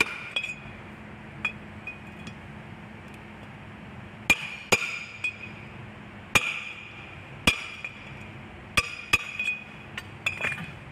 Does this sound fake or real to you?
real